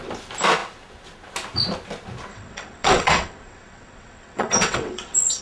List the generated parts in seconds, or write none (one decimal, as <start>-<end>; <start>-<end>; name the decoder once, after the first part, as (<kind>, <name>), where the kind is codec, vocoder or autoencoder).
2.3-5.4 (vocoder, WaveNeXt)

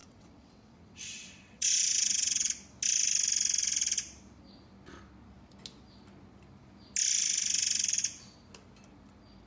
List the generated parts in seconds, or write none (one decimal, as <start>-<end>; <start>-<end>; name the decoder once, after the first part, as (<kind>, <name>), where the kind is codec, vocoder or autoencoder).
0.0-2.5 (vocoder, WaveNeXt)